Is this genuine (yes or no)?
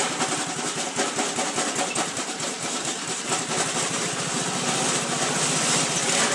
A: yes